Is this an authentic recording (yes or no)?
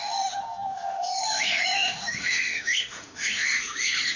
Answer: no